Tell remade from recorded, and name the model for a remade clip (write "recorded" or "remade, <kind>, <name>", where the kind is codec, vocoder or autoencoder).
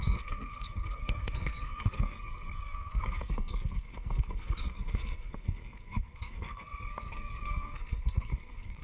remade, codec, SNAC